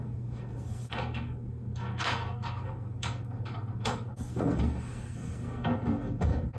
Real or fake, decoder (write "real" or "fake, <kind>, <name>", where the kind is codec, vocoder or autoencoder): fake, codec, SNAC